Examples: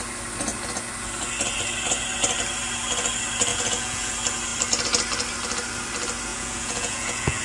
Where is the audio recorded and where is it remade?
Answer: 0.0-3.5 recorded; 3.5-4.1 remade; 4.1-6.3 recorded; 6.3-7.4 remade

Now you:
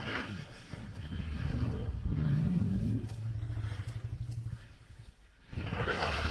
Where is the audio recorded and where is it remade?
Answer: 0.0-3.3 remade; 3.3-4.5 recorded; 4.5-6.3 remade

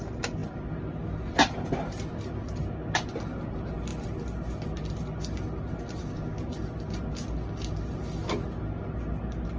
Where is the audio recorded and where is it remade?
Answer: 0.0-9.6 recorded

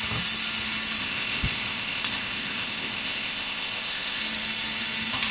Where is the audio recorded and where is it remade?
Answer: 0.0-1.0 recorded; 1.0-4.2 remade; 4.2-5.3 recorded

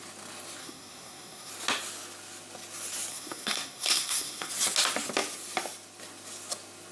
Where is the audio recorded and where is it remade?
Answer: 0.0-0.6 recorded; 0.6-1.5 remade; 1.5-3.1 recorded; 3.1-4.5 remade; 4.5-6.9 recorded

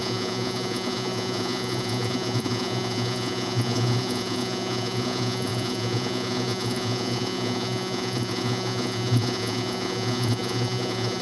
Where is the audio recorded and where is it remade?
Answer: 0.0-11.2 remade